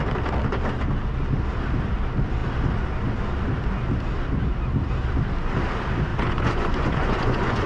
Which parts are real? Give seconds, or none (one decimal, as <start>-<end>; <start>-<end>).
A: 0.0-6.1